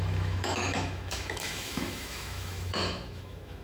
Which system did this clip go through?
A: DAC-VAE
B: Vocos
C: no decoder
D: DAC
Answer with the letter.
A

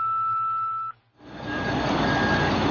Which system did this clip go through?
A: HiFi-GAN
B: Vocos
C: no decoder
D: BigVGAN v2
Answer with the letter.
C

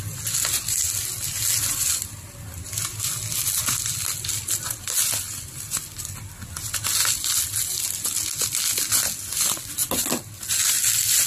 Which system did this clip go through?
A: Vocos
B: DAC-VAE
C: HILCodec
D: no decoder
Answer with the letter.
D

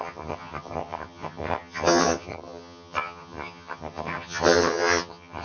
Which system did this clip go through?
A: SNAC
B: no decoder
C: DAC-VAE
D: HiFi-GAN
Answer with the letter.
D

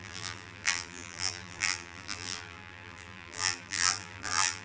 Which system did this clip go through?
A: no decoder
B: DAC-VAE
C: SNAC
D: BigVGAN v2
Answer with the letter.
D